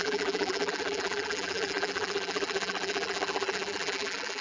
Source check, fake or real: fake